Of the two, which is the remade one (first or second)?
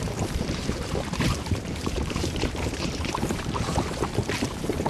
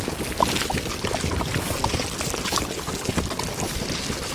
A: first